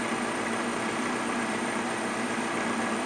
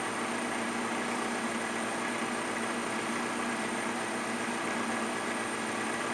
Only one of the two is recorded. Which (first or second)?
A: second